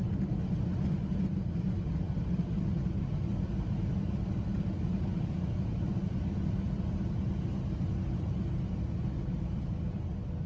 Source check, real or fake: real